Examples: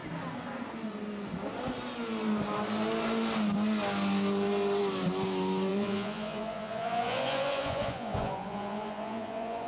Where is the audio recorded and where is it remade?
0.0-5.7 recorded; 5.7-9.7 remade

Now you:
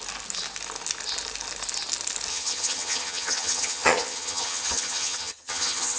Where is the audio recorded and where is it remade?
0.0-2.3 recorded; 2.3-6.0 remade